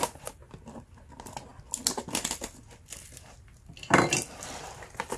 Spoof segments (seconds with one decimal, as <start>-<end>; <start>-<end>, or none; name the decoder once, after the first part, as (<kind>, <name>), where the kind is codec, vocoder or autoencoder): none